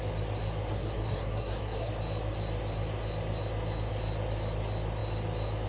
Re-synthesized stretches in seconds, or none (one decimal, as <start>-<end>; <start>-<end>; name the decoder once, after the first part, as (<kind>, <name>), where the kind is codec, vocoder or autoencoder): 0.7-1.9 (codec, SNAC)